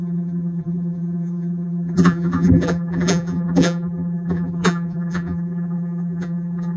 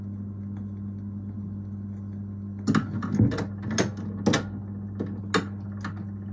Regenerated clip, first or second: first